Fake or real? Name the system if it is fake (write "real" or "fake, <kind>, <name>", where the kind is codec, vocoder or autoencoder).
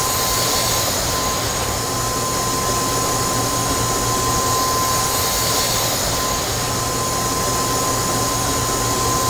real